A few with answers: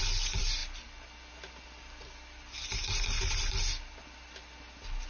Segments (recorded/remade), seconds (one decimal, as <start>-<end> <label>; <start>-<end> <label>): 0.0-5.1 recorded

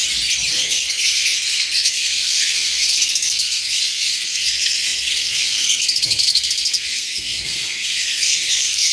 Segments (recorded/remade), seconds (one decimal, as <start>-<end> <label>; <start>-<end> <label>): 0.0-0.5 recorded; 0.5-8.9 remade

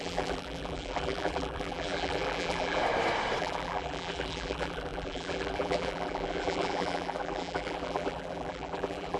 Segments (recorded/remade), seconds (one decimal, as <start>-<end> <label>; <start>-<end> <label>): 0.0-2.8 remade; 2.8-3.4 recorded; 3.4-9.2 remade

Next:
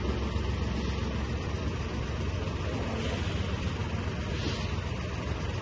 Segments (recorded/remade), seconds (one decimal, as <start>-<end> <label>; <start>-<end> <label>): 0.0-5.6 recorded

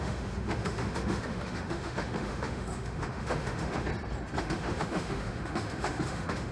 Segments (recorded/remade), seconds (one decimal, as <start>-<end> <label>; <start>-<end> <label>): 0.0-3.9 remade; 3.9-4.4 recorded; 4.4-6.5 remade